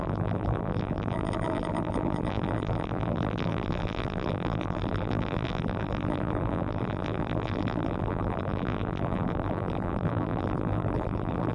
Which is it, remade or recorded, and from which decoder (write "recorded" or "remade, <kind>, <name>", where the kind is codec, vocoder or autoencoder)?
remade, vocoder, BigVGAN v2